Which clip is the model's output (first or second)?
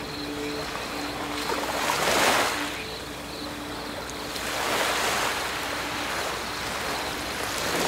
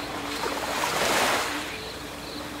second